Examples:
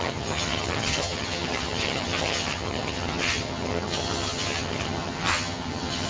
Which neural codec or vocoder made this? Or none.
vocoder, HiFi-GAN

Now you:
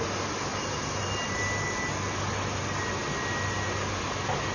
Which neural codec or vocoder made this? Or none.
none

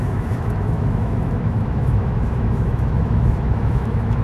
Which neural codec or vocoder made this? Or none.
autoencoder, DAC-VAE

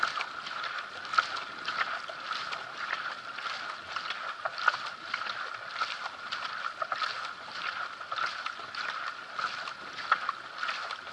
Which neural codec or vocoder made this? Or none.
none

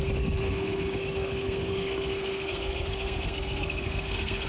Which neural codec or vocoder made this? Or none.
codec, SNAC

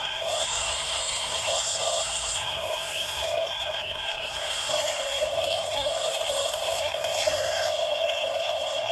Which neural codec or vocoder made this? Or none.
codec, SNAC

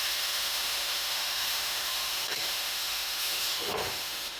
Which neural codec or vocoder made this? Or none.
autoencoder, DAC-VAE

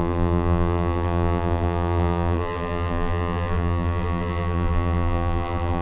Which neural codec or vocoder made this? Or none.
vocoder, BigVGAN v2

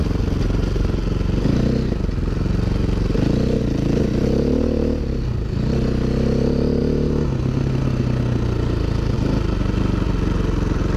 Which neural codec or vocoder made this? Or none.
none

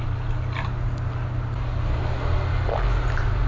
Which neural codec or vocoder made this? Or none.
none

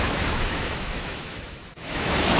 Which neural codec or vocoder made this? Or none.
autoencoder, DAC-VAE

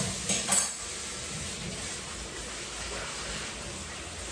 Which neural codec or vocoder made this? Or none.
none